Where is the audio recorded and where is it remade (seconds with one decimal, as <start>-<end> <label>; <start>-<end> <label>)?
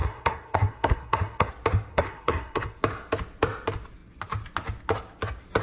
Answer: 0.0-1.5 remade; 1.5-1.9 recorded; 1.9-2.8 remade; 2.8-5.6 recorded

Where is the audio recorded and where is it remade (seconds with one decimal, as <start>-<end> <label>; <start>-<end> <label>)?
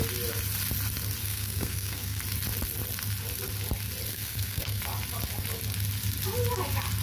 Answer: 0.0-1.2 recorded; 1.2-2.2 remade; 2.2-4.1 recorded; 4.1-4.8 remade; 4.8-7.0 recorded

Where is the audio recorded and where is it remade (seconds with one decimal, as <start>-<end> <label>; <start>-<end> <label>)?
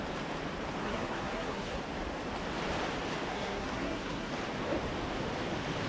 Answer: 0.0-0.8 recorded; 0.8-1.8 remade; 1.8-3.3 recorded; 3.3-4.3 remade; 4.3-5.9 recorded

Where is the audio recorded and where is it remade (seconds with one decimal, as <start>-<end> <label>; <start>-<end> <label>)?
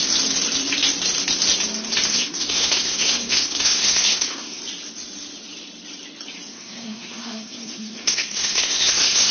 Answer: 0.0-2.1 recorded; 2.1-4.6 remade; 4.6-6.5 recorded; 6.5-9.3 remade